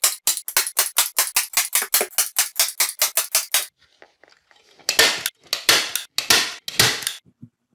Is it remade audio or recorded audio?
recorded